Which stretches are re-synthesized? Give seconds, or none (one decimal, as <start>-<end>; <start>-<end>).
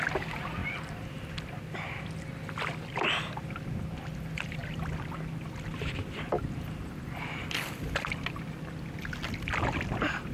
none